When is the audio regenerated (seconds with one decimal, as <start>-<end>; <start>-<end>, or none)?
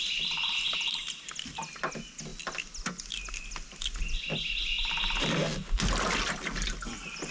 none